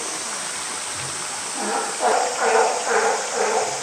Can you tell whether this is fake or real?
real